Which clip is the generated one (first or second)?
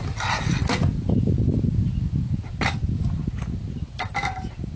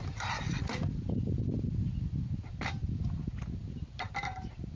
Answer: second